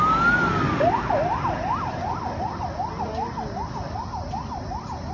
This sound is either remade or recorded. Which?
recorded